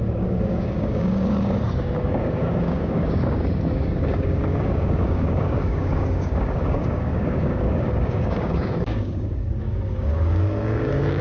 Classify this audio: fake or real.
fake